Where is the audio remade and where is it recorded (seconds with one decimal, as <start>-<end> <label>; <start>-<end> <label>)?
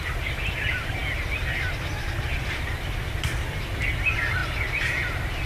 0.0-5.5 recorded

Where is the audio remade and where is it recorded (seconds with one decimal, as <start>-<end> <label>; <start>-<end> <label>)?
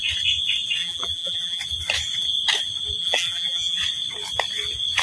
0.0-0.8 recorded; 0.8-1.6 remade; 1.6-3.0 recorded; 3.0-3.8 remade; 3.8-5.0 recorded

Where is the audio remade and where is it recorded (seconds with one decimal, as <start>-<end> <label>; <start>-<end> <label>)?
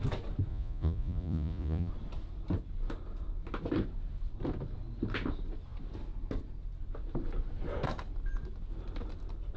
0.0-0.5 recorded; 0.5-1.9 remade; 1.9-9.6 recorded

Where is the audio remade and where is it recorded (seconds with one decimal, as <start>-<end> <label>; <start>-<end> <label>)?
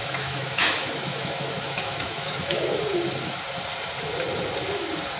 0.0-2.8 remade; 2.8-5.2 recorded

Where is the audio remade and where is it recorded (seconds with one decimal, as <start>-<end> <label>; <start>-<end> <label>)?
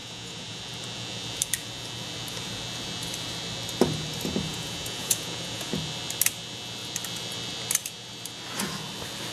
0.0-0.6 remade; 0.6-4.5 recorded; 4.5-5.7 remade; 5.7-9.3 recorded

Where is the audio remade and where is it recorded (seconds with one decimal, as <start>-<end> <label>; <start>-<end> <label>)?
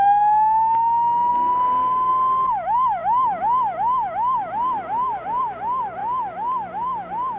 0.0-7.4 recorded